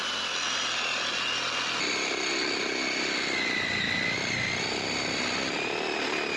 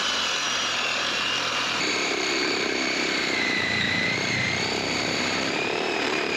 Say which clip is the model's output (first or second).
second